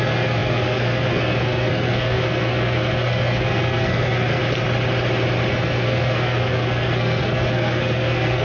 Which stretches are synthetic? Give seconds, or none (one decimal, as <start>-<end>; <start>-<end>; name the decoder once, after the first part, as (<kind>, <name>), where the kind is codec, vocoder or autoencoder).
0.0-4.4 (codec, SNAC); 5.5-8.4